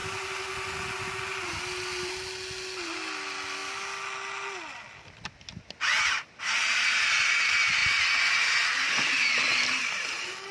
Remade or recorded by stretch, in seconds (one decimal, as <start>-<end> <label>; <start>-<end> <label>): 0.0-10.5 recorded